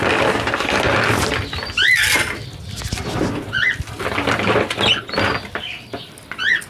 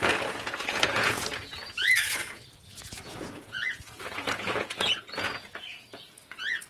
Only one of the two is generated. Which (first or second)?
second